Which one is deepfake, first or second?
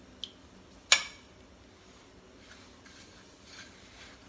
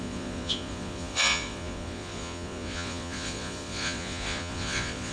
second